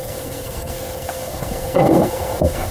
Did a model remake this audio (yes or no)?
yes